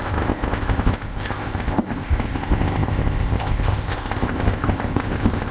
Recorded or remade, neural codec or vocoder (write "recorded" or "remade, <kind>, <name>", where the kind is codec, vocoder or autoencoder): remade, codec, ZipCodec